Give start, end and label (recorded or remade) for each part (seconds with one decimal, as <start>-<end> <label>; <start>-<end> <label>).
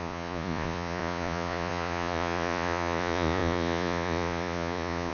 0.0-5.1 remade